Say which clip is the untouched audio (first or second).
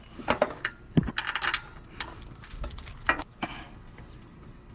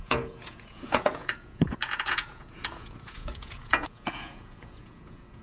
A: first